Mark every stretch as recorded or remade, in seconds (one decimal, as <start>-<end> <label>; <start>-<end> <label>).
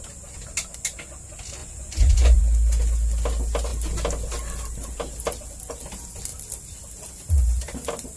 0.0-1.6 recorded; 1.6-2.4 remade; 2.4-8.2 recorded